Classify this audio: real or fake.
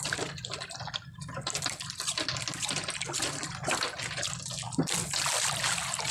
real